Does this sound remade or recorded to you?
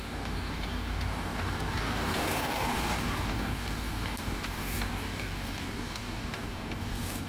remade